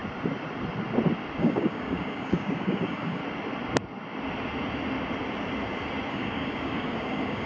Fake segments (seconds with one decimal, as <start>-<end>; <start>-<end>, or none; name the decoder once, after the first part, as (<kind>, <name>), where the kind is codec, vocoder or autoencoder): 1.4-3.2 (codec, DAC); 6.1-7.5